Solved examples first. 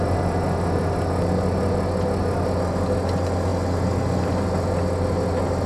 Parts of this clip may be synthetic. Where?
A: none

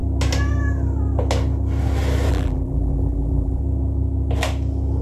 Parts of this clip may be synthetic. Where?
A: 2.3-3.6

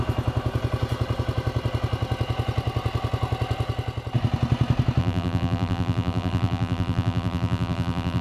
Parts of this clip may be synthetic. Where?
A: 5.0-8.2

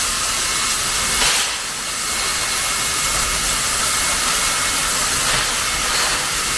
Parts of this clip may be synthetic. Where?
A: 2.3-3.4; 5.8-6.6

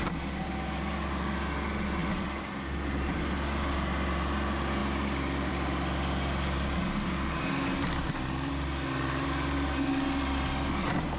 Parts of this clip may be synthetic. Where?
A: 2.0-3.2

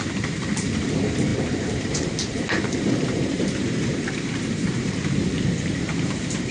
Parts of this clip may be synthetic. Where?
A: 0.0-5.2; 5.7-6.5